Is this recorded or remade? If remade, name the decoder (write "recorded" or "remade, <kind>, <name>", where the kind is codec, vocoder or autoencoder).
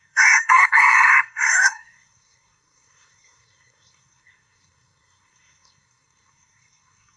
remade, codec, SNAC